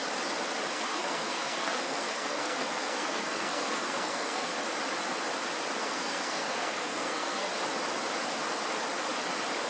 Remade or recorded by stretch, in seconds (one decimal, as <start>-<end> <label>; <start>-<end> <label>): 0.0-0.7 recorded; 0.7-4.5 remade; 4.5-5.8 recorded; 5.8-7.5 remade; 7.5-9.7 recorded